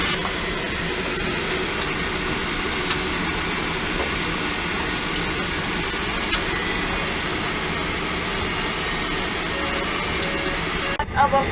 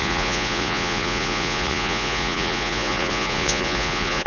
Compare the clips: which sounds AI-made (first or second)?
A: second